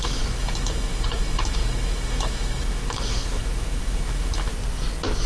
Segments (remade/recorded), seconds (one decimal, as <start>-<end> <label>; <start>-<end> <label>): 0.0-4.5 remade; 4.5-5.3 recorded